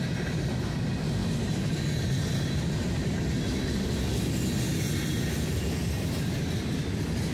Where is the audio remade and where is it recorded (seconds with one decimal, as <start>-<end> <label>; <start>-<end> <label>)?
0.0-7.3 recorded